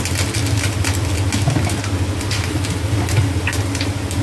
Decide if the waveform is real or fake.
real